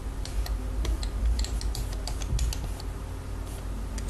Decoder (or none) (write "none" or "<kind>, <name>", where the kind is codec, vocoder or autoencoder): none